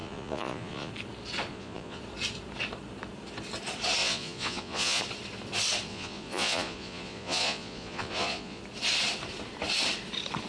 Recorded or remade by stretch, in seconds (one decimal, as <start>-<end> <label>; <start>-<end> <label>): 0.0-0.9 remade; 0.9-1.5 recorded; 1.5-2.0 remade; 2.0-4.0 recorded; 4.0-5.0 remade; 5.0-5.9 recorded; 5.9-8.6 remade; 8.6-10.5 recorded